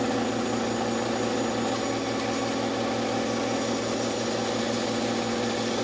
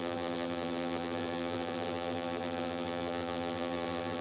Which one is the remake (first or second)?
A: second